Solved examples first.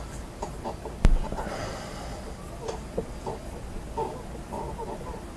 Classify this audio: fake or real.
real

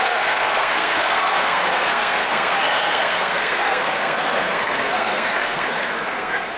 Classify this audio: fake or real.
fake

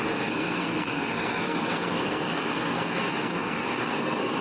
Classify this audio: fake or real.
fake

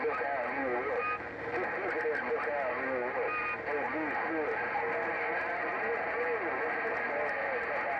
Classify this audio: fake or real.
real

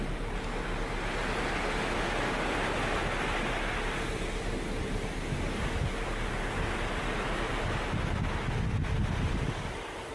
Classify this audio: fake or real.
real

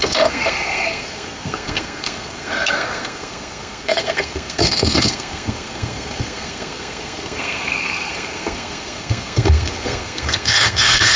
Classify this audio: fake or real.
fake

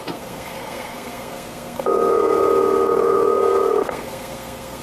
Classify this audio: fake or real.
fake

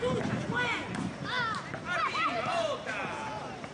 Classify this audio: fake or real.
real